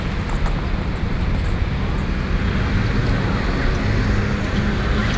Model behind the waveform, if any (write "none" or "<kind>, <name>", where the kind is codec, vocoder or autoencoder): none